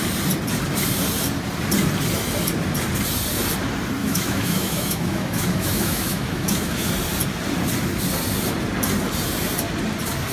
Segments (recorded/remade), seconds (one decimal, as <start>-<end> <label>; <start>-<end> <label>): 0.0-4.0 recorded; 4.0-6.9 remade; 6.9-10.3 recorded